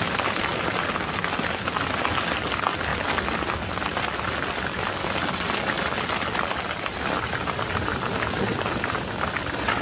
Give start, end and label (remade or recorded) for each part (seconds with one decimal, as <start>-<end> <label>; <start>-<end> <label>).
0.0-9.8 recorded